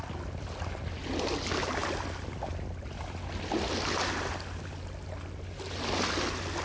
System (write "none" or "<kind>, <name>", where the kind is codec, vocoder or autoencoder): none